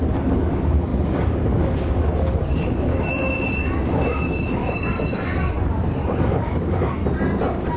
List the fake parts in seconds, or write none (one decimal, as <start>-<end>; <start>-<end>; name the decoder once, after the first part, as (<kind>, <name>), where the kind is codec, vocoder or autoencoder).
0.0-2.9 (codec, DAC); 4.4-7.0